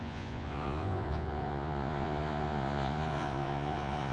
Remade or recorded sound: remade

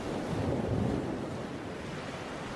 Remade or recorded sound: recorded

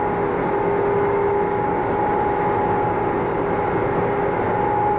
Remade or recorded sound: recorded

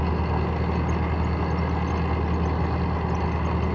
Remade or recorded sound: recorded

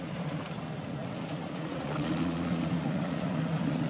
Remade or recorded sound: remade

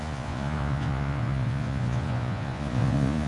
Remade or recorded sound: remade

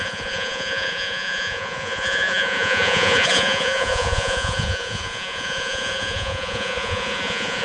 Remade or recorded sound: remade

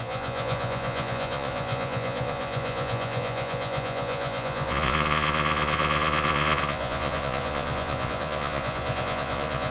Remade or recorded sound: remade